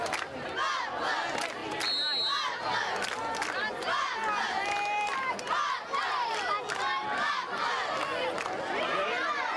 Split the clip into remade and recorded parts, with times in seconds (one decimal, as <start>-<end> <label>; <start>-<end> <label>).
0.0-9.6 recorded